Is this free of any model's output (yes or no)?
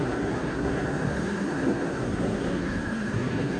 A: no